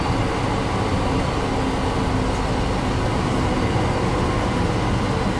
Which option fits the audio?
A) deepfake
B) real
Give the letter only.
B